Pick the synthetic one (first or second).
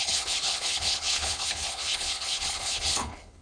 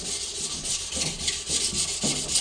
first